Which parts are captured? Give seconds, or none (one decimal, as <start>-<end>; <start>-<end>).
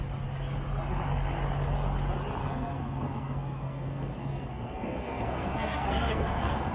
0.0-2.4